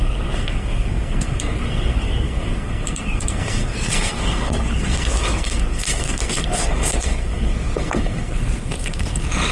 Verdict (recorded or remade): remade